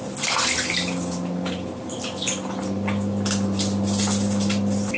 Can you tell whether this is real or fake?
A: real